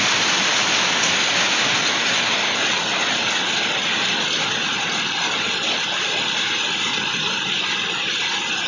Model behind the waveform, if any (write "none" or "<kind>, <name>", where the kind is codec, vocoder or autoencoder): none